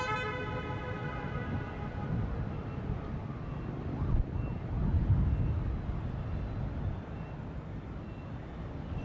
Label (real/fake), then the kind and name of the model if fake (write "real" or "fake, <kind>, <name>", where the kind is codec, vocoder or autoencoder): real